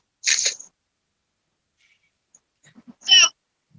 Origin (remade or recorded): recorded